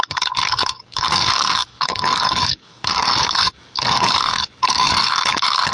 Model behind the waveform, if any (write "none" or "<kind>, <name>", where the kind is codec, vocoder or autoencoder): codec, DAC